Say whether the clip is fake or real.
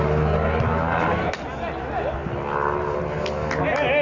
real